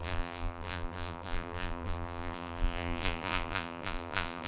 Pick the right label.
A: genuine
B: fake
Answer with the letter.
B